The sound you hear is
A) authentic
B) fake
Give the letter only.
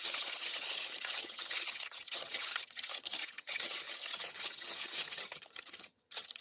B